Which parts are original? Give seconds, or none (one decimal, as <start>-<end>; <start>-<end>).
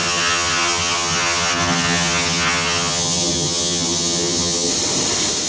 4.7-5.5